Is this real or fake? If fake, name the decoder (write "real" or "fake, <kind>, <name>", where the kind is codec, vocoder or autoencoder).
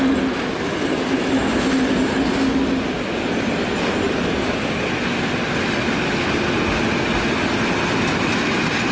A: real